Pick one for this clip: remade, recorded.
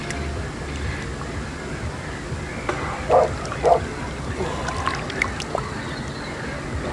recorded